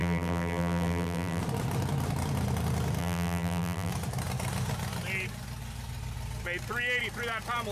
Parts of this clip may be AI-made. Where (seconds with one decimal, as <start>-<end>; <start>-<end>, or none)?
0.0-1.4; 3.0-3.9